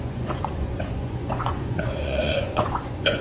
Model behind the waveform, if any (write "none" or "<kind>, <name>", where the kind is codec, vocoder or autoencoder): vocoder, Vocos